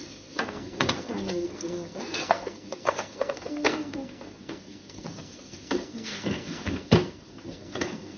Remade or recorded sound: remade